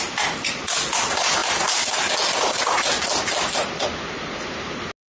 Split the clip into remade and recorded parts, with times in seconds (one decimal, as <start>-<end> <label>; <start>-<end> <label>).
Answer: 0.0-5.1 recorded